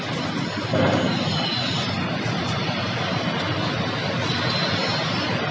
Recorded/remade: recorded